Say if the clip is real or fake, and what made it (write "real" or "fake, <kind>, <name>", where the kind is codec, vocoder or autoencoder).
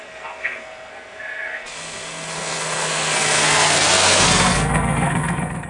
fake, codec, SNAC